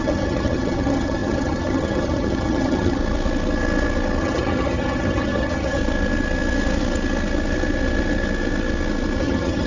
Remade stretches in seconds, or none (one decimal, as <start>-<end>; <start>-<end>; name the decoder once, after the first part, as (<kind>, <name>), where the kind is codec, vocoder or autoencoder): 0.0-3.0 (vocoder, HiFi-GAN); 4.2-5.8; 9.2-9.7